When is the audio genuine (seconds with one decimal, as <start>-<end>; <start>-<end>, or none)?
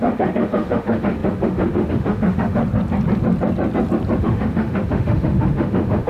2.6-4.2